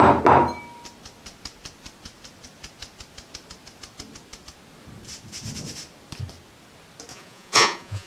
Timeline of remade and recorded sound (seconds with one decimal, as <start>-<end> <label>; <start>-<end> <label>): 0.0-7.1 recorded; 7.1-8.1 remade